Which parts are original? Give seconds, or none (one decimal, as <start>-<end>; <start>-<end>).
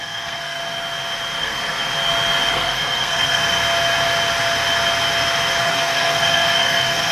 0.6-1.4; 1.9-2.5; 3.4-5.6